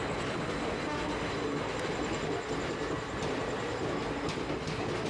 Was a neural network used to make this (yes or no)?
no